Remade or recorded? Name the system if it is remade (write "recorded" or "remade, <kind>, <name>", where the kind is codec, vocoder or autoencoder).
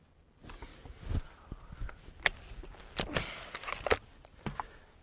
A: recorded